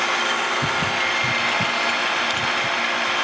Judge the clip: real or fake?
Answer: real